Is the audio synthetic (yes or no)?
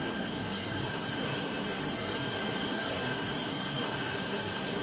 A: yes